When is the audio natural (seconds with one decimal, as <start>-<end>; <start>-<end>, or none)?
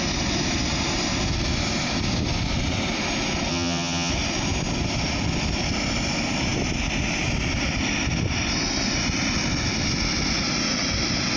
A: 0.0-3.5; 4.1-11.4